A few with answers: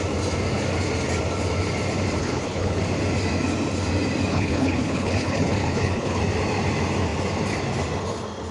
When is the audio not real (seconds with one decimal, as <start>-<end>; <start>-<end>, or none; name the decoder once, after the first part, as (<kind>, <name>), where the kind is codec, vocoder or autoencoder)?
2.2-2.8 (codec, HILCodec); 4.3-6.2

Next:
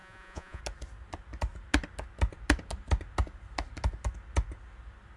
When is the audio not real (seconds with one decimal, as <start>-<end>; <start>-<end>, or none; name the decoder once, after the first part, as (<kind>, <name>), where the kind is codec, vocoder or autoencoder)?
0.0-0.6 (vocoder, Vocos)

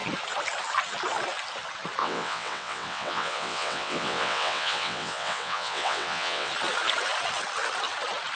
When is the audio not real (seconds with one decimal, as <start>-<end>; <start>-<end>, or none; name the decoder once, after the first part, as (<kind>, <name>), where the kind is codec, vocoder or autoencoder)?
2.0-6.5 (vocoder, WaveNeXt)

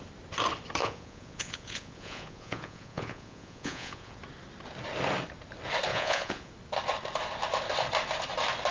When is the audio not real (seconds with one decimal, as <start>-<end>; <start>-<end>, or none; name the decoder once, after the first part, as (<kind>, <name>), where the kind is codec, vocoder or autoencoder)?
0.8-4.2 (vocoder, Vocos); 5.9-6.5

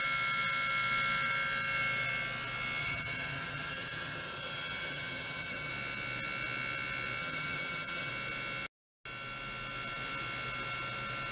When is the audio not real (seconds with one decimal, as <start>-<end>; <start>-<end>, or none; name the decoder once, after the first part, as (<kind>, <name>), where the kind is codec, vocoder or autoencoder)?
2.8-5.7 (vocoder, HiFi-GAN); 7.2-8.1